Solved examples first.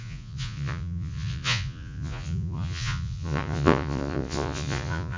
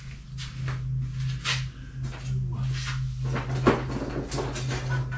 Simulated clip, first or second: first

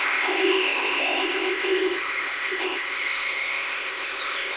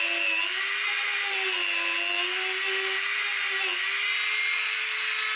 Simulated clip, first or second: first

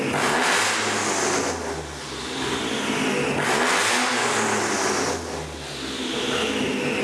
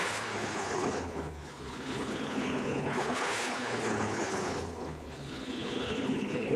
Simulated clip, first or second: second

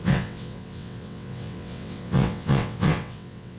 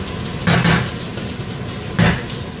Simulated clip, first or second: first